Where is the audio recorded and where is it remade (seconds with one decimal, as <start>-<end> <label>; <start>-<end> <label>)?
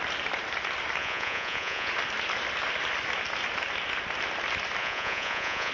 0.0-1.0 recorded; 1.0-1.9 remade; 1.9-4.8 recorded; 4.8-5.7 remade